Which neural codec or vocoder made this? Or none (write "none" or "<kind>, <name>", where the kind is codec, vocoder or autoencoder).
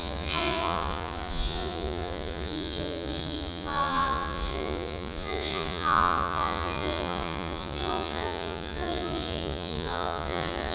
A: vocoder, Vocos